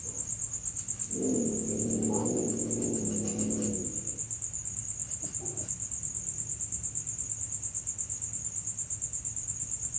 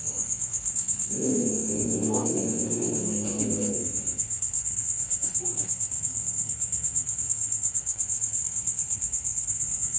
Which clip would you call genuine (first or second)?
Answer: first